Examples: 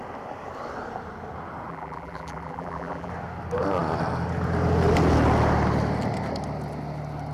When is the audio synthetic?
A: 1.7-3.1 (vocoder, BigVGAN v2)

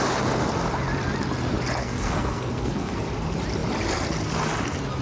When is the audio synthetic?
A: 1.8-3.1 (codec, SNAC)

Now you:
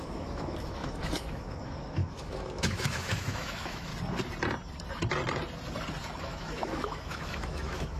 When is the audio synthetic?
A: 0.0-3.9 (autoencoder, DAC-VAE); 6.2-8.0

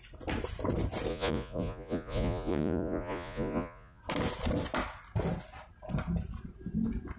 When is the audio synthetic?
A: 1.1-4.0 (vocoder, Vocos)

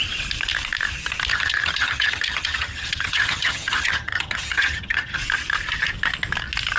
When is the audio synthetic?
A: 1.3-5.2 (vocoder, HiFi-GAN)

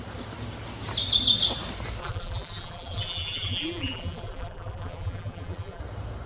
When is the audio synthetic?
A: 2.0-5.8 (vocoder, BigVGAN v2)